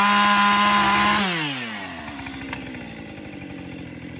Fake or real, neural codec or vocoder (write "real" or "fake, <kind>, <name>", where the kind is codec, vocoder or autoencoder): real